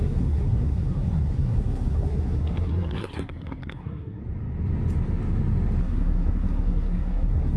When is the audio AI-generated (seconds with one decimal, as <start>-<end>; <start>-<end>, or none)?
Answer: 0.0-4.2; 5.8-7.6